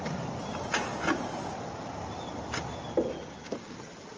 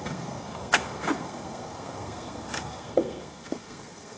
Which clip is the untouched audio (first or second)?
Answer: first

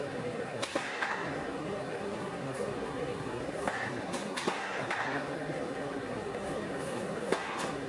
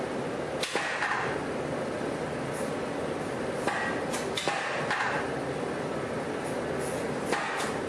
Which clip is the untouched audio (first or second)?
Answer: second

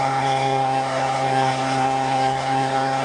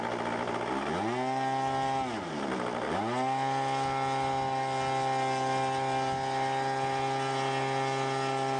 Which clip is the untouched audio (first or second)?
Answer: second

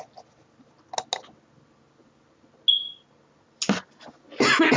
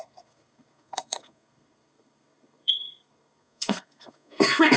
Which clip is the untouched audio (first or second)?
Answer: first